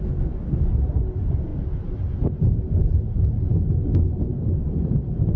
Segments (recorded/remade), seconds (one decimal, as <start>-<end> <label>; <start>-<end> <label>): 0.0-5.4 recorded